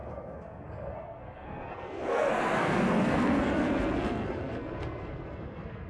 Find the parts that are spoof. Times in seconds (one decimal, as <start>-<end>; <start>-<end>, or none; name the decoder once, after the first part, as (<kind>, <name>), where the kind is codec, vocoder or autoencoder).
0.0-5.9 (codec, SNAC)